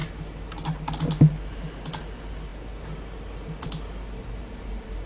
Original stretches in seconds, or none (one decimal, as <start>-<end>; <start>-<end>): 0.9-2.5; 4.4-5.1